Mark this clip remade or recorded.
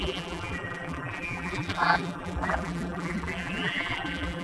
remade